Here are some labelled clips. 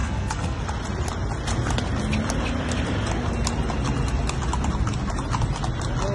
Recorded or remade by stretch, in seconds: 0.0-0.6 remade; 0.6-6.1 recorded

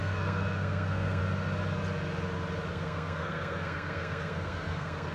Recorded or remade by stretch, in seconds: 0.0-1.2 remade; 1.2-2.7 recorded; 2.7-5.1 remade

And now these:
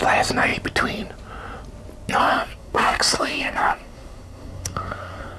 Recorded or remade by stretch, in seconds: 0.0-2.2 recorded; 2.2-5.4 remade

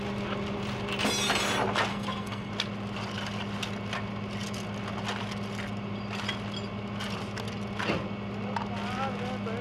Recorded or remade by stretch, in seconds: 0.0-1.9 recorded; 1.9-2.5 remade; 2.5-9.6 recorded

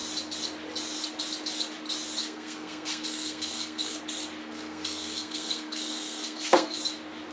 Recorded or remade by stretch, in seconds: 0.0-2.2 recorded; 2.2-4.0 remade; 4.0-4.4 recorded; 4.4-6.8 remade; 6.8-7.3 recorded

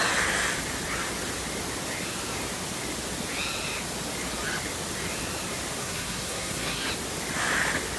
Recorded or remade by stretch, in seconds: 0.0-5.8 recorded; 5.8-6.9 remade; 6.9-8.0 recorded

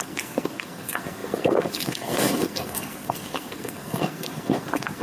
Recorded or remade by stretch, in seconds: 0.0-5.0 remade